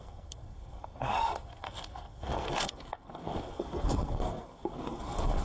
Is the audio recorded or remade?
remade